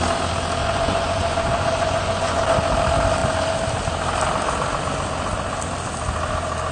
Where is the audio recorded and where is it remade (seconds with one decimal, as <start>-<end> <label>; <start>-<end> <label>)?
0.0-0.6 recorded; 0.6-2.4 remade; 2.4-6.7 recorded